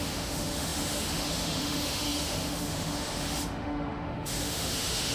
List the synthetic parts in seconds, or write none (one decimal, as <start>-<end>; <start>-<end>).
0.0-5.1